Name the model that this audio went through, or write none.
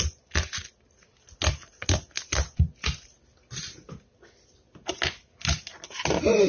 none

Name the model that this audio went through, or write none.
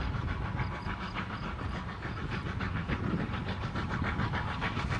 none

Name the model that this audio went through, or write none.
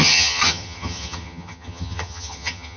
vocoder, HiFi-GAN